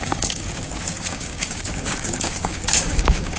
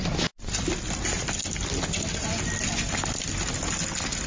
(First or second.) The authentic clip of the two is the second